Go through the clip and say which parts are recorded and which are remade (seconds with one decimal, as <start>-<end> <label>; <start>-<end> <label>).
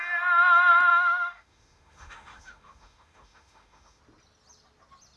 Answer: 0.0-0.9 recorded; 0.9-4.0 remade; 4.0-5.2 recorded